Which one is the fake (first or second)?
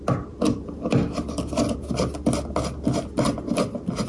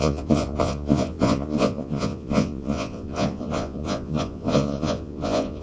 second